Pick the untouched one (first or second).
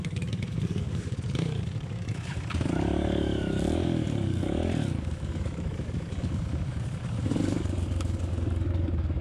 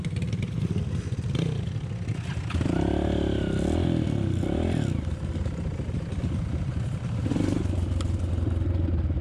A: second